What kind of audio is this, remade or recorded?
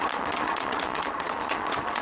remade